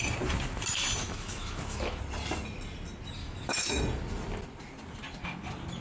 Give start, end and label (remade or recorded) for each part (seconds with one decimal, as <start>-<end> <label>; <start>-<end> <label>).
0.0-1.0 recorded; 1.0-2.0 remade; 2.0-3.2 recorded; 3.2-3.8 remade; 3.8-5.8 recorded